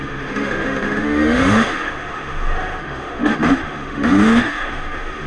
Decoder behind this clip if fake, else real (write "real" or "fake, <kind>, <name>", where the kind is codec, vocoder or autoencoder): fake, autoencoder, DAC-VAE